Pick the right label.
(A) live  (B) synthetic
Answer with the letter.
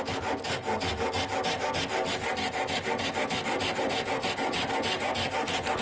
A